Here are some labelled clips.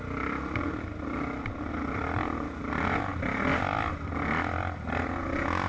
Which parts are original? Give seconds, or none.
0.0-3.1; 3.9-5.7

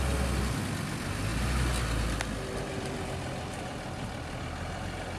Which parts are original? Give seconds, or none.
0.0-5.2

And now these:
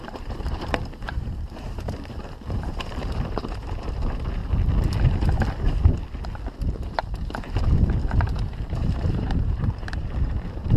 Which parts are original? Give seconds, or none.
4.4-8.2